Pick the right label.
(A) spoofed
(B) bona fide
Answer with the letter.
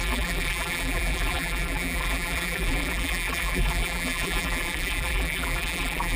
A